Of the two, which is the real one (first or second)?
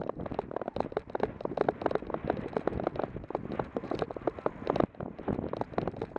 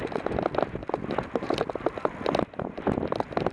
first